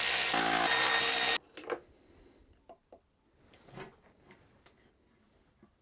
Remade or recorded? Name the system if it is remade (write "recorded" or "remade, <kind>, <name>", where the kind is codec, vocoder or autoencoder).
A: recorded